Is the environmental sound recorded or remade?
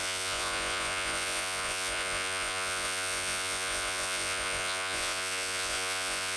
remade